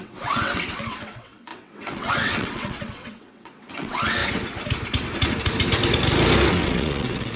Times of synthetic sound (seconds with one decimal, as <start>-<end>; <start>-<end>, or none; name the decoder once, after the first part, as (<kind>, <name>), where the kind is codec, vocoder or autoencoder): 0.0-4.2 (vocoder, WaveNeXt); 6.5-7.4